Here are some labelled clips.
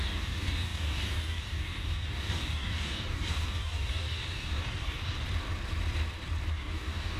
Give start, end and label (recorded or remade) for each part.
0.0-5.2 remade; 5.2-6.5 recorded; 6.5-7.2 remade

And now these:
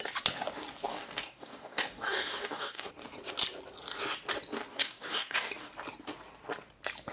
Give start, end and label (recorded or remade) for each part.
0.0-0.9 recorded; 0.9-2.9 remade; 2.9-4.7 recorded; 4.7-5.7 remade; 5.7-7.1 recorded

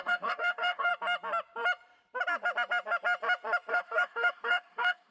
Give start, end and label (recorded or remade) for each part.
0.0-0.9 remade; 0.9-3.7 recorded; 3.7-5.1 remade